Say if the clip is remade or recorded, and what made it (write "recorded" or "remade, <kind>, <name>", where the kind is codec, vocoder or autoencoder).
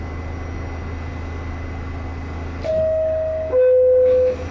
recorded